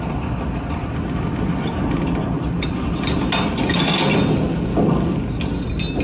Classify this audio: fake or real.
real